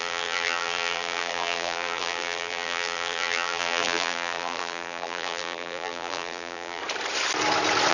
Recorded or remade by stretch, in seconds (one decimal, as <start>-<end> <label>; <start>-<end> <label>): 0.0-6.8 remade; 6.8-7.9 recorded